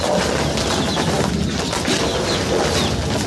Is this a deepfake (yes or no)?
no